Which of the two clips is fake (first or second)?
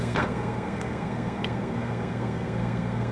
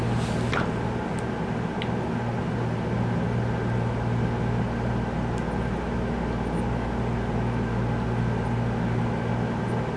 first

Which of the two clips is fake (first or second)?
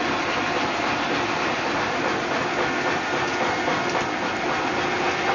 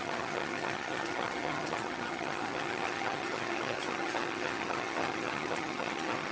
second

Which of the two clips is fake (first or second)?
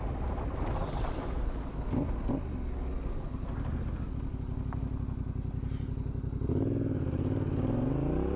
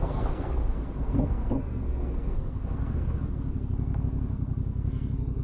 second